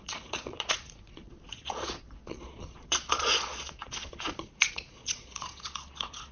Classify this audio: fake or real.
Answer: fake